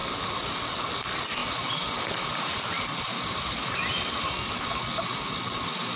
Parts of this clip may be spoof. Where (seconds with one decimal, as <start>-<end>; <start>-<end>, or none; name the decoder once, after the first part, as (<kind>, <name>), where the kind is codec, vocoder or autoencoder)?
none